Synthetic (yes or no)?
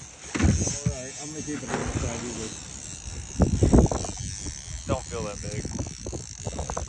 no